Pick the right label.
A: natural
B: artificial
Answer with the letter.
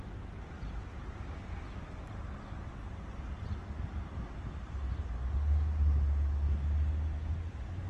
A